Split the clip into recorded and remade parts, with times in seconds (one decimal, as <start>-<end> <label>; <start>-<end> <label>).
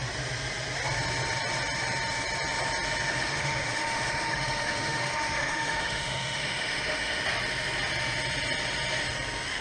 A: 0.0-3.1 recorded; 3.1-7.2 remade; 7.2-9.6 recorded